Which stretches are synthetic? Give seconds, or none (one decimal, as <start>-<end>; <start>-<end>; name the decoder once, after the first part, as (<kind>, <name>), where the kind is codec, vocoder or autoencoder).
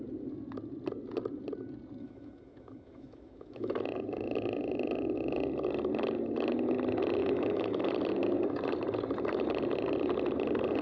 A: 2.0-3.8 (autoencoder, DAC-VAE); 7.2-7.9